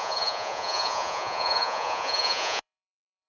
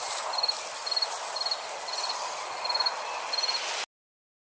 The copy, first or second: first